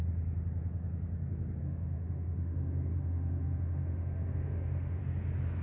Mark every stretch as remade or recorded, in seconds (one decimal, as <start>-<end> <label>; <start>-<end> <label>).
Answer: 0.0-1.6 recorded; 1.6-5.0 remade; 5.0-5.6 recorded

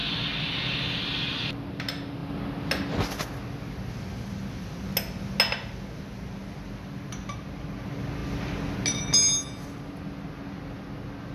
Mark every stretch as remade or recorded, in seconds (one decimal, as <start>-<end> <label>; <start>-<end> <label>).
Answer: 0.0-11.3 recorded

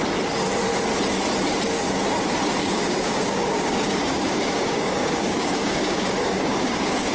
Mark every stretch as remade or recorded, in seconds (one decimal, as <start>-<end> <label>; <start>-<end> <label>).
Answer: 0.0-2.6 recorded; 2.6-7.1 remade

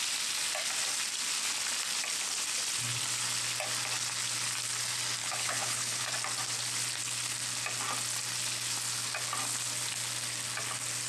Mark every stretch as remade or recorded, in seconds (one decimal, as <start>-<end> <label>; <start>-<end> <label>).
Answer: 0.0-5.2 recorded; 5.2-6.1 remade; 6.1-11.1 recorded

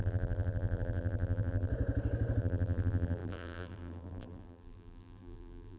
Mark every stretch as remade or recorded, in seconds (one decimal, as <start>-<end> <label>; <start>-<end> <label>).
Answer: 0.0-1.7 remade; 1.7-2.4 recorded; 2.4-5.8 remade